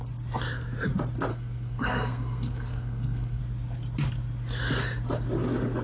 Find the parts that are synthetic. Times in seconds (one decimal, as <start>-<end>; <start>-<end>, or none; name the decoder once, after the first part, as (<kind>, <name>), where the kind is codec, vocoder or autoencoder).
1.3-3.4 (codec, SNAC)